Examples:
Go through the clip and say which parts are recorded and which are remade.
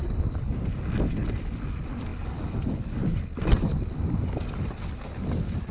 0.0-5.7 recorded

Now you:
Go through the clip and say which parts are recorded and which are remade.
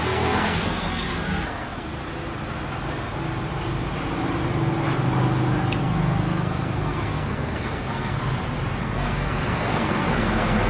0.0-1.9 remade; 1.9-5.8 recorded; 5.8-8.2 remade; 8.2-8.8 recorded; 8.8-10.7 remade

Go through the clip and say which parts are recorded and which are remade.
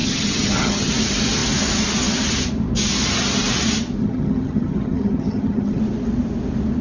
0.0-0.9 remade; 0.9-4.0 recorded; 4.0-5.8 remade; 5.8-6.8 recorded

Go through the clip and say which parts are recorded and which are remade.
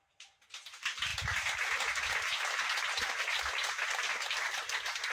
0.0-5.1 recorded